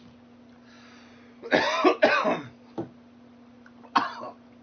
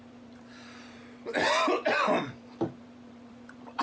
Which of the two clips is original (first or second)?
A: first